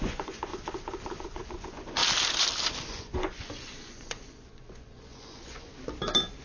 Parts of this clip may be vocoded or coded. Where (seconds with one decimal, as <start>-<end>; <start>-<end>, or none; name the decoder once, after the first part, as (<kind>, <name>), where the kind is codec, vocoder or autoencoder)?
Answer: 0.0-0.5 (vocoder, Vocos); 1.2-2.0; 2.9-5.7